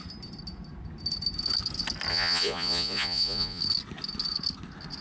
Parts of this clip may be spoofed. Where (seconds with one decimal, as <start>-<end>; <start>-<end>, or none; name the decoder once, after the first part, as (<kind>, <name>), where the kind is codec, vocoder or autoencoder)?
2.1-3.6 (vocoder, Vocos)